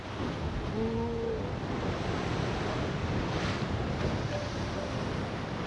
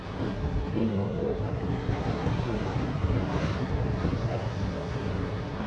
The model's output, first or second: second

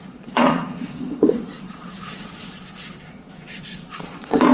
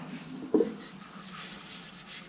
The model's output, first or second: first